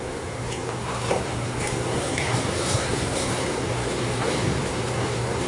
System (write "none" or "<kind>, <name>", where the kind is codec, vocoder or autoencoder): codec, SNAC